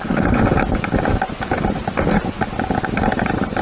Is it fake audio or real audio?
real